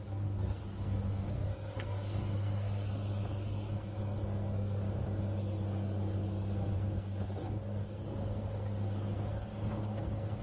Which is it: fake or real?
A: fake